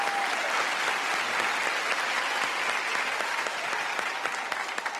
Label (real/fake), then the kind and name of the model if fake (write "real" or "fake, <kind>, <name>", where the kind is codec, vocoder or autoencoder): real